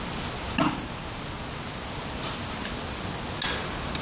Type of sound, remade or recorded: recorded